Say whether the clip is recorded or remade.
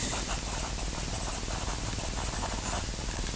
recorded